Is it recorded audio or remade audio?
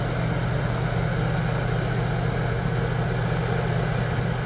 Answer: recorded